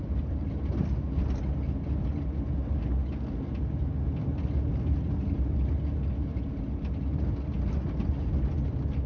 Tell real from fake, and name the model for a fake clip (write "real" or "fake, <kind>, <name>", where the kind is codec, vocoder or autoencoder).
real